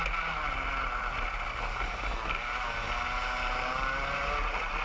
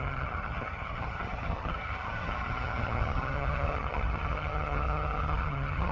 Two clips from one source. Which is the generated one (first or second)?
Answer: second